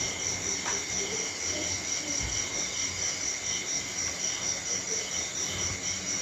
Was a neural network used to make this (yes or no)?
no